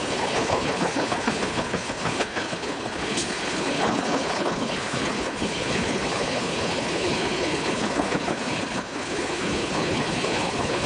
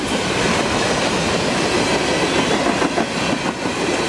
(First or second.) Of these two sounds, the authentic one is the second